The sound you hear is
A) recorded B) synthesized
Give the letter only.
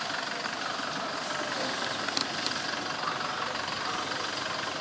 A